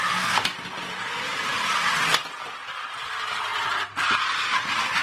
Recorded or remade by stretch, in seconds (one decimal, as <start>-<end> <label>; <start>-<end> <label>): 0.0-5.0 recorded